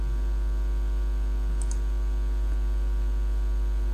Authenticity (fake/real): real